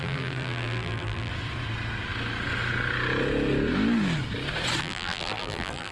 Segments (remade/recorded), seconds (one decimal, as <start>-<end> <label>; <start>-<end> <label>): 0.0-1.3 remade; 1.3-4.8 recorded; 4.8-5.9 remade